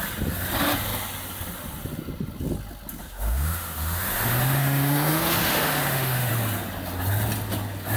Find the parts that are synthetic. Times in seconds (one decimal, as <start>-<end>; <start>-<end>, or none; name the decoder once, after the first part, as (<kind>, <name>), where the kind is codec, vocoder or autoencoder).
3.0-6.3 (autoencoder, DAC-VAE)